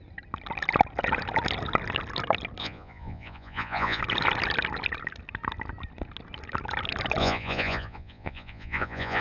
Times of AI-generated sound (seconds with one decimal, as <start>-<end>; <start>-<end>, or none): 2.6-4.0; 7.2-9.2